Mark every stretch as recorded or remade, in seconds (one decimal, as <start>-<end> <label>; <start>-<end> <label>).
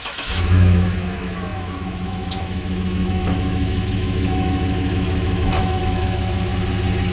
0.0-6.5 remade; 6.5-7.1 recorded